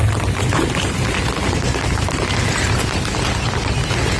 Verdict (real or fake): real